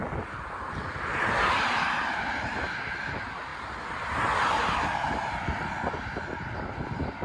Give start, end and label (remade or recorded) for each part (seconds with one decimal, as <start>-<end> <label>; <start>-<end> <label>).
0.0-7.2 recorded